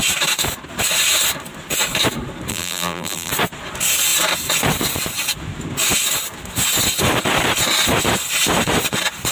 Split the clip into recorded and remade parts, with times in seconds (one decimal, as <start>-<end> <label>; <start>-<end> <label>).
0.0-2.5 recorded; 2.5-3.3 remade; 3.3-9.3 recorded